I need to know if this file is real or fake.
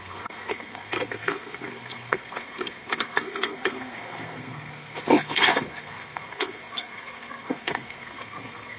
fake